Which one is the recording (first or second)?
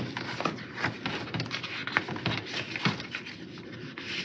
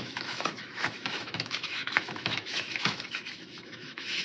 first